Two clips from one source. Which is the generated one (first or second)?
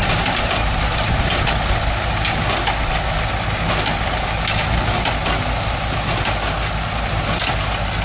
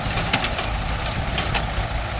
second